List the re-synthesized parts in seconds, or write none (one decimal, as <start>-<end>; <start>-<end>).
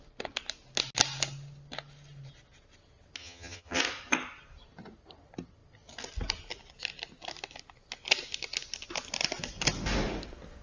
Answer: 3.2-3.8